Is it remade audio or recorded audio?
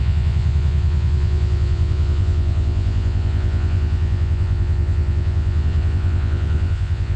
remade